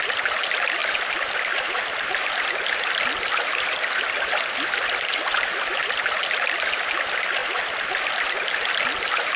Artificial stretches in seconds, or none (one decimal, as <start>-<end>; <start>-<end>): 0.8-2.4; 5.1-6.2; 7.4-8.7